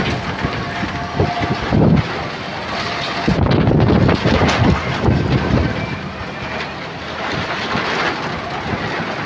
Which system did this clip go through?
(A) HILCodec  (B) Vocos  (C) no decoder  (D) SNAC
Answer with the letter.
C